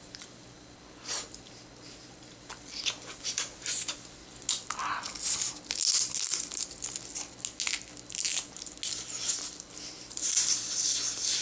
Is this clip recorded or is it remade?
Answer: recorded